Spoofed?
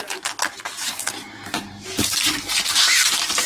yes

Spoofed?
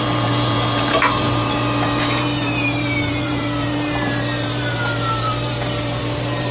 yes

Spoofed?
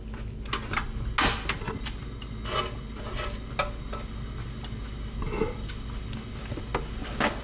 no